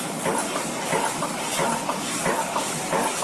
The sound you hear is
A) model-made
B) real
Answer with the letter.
B